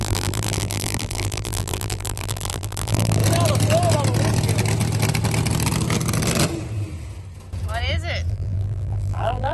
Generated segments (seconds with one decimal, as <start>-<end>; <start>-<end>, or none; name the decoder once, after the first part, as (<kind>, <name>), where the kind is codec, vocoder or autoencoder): 0.0-3.2 (vocoder, BigVGAN v2); 8.3-9.5